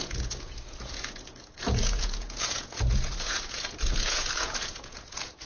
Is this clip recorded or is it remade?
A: remade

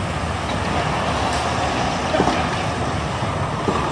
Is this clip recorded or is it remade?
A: recorded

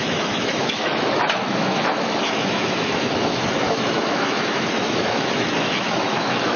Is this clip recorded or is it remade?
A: remade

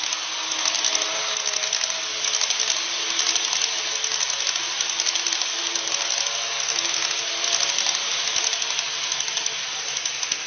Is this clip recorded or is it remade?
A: recorded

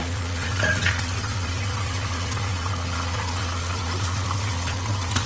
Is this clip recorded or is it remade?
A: remade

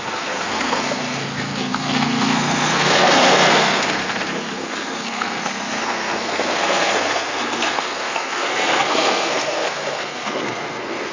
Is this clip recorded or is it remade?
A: remade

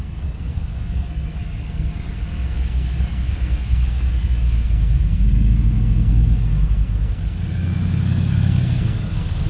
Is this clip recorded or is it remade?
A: remade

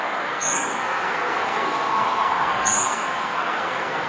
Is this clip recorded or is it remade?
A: remade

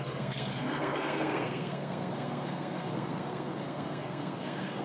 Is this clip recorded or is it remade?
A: remade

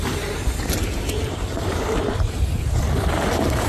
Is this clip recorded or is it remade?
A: remade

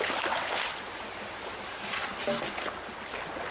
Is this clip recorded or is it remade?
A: recorded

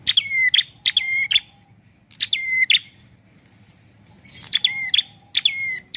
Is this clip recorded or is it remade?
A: recorded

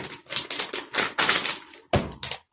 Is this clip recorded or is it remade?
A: recorded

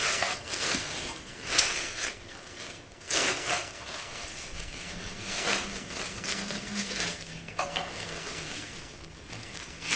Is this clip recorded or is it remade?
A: remade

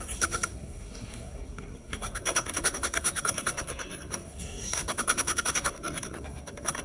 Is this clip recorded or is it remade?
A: remade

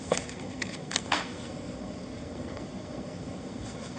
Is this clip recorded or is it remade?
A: remade